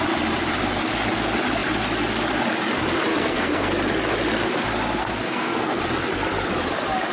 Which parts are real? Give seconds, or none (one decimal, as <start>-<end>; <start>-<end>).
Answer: 0.0-3.1; 3.7-5.0; 5.8-7.1